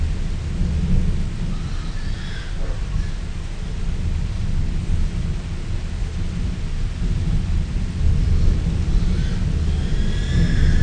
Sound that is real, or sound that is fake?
real